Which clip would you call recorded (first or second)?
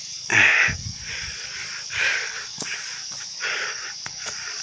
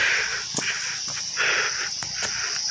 second